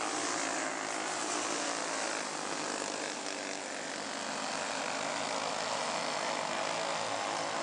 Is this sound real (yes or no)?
yes